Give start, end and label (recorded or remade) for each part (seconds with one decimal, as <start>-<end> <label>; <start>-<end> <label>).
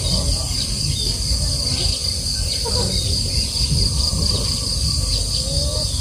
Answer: 0.0-2.0 recorded; 2.0-4.7 remade; 4.7-6.0 recorded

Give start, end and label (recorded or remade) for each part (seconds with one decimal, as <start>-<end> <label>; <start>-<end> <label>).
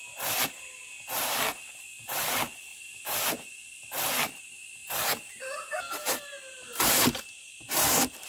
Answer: 0.0-2.7 recorded; 2.7-3.3 remade; 3.3-4.8 recorded; 4.8-8.3 remade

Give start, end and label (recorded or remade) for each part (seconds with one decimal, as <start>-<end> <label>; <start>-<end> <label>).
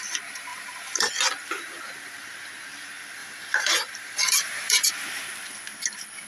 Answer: 0.0-0.5 recorded; 0.5-1.1 remade; 1.1-3.2 recorded; 3.2-4.9 remade; 4.9-6.3 recorded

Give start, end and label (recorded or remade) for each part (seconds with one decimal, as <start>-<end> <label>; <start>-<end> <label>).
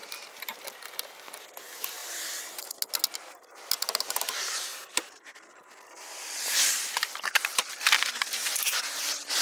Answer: 0.0-1.6 remade; 1.6-2.0 recorded; 2.0-2.6 remade; 2.6-4.7 recorded; 4.7-7.3 remade; 7.3-9.4 recorded